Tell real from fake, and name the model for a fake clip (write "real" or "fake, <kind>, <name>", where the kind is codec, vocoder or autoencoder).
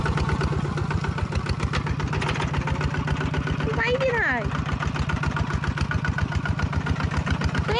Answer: real